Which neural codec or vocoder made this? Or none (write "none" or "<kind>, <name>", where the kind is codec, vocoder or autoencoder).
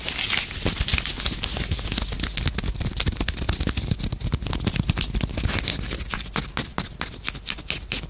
none